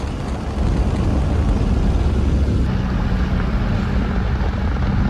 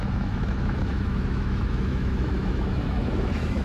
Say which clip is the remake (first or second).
second